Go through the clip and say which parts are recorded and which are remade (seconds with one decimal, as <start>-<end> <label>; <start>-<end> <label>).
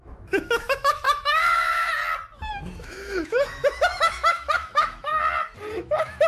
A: 0.0-2.0 remade; 2.0-2.5 recorded; 2.5-5.1 remade; 5.1-5.7 recorded; 5.7-6.3 remade